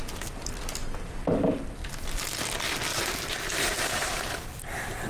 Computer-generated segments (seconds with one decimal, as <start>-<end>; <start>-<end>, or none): 2.9-4.2